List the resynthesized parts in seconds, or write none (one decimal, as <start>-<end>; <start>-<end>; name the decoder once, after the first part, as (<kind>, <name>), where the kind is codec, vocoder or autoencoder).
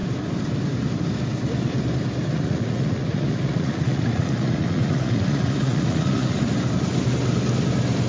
2.3-6.4 (vocoder, Vocos)